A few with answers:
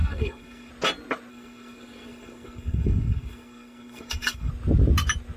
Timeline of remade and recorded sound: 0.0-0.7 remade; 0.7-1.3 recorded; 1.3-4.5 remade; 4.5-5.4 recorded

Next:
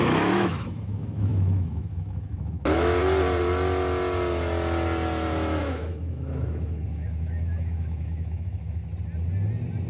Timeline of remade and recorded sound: 0.0-3.0 remade; 3.0-5.6 recorded; 5.6-8.8 remade; 8.8-9.9 recorded